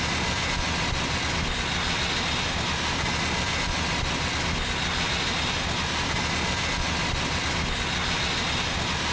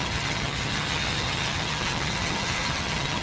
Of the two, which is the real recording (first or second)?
first